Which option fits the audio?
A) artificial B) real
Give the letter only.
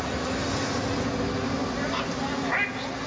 B